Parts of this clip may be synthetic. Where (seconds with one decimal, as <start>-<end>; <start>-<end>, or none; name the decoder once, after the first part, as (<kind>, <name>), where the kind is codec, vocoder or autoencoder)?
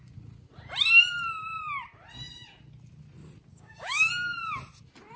3.5-4.1 (codec, DAC)